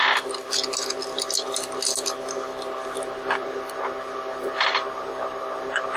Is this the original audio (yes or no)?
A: yes